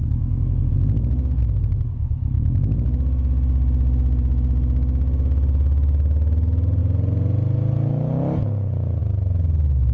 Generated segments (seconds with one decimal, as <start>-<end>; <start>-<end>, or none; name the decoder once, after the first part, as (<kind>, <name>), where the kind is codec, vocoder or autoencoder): none